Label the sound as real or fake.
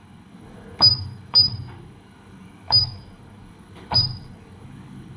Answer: fake